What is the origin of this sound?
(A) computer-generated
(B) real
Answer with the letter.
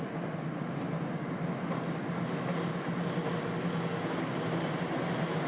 B